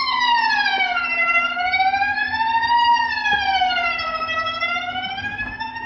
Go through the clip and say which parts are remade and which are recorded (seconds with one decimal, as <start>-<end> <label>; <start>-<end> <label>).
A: 0.0-5.9 recorded